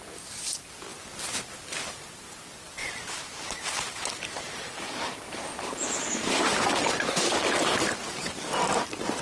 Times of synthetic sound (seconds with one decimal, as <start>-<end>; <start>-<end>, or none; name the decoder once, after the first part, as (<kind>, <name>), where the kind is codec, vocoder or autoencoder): 2.8-7.1 (vocoder, BigVGAN v2)